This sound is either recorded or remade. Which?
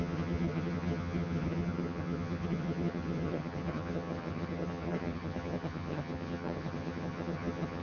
remade